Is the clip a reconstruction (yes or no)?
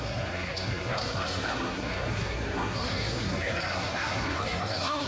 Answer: yes